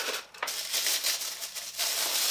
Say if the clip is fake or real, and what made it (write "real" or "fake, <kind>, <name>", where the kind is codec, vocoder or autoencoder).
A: real